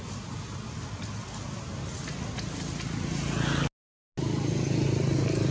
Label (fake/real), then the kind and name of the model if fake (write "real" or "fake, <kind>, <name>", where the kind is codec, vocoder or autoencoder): real